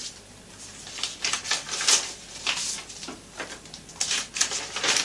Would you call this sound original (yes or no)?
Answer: yes